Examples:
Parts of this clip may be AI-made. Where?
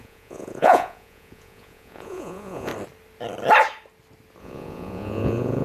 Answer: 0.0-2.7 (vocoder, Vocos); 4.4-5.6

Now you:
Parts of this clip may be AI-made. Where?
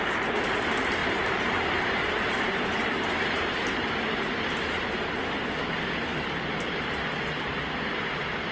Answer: 1.0-5.2 (vocoder, BigVGAN v2)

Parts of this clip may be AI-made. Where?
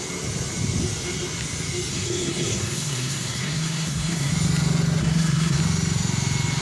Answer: 1.9-4.3 (codec, SNAC); 5.0-5.6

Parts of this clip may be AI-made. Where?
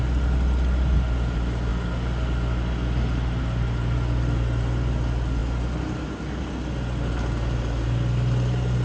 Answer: none